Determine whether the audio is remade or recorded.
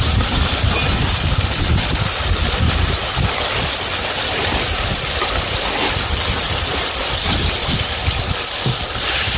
recorded